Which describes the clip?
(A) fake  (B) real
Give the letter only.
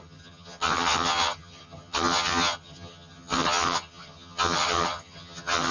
A